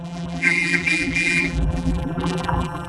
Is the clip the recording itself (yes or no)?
no